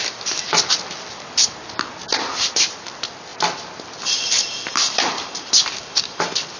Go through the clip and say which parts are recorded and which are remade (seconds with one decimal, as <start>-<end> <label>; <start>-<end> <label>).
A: 0.0-6.6 recorded